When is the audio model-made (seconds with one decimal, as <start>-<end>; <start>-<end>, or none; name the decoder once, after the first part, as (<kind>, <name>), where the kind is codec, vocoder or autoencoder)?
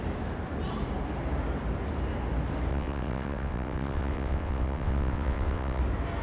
2.7-5.8 (vocoder, WaveNeXt)